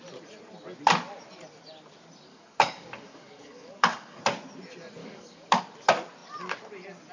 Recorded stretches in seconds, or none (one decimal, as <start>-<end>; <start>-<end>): 0.0-2.3; 4.2-5.0; 5.6-7.1